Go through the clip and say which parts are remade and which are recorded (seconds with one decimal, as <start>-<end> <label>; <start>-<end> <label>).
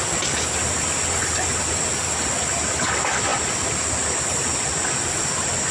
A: 0.0-5.7 recorded